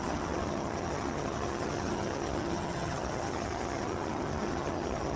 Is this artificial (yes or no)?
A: yes